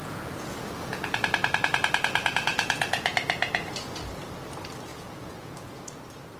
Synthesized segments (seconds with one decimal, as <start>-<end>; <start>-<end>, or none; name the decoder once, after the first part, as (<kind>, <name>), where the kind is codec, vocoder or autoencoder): 0.0-1.2 (vocoder, Vocos); 2.5-3.1; 4.9-6.0